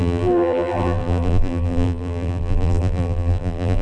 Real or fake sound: fake